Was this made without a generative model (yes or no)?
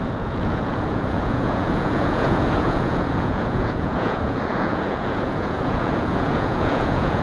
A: no